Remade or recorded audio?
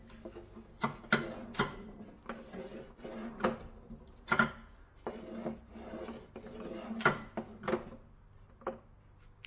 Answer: recorded